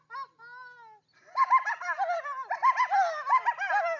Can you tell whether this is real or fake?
real